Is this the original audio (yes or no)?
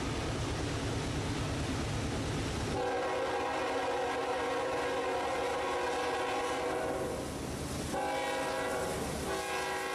yes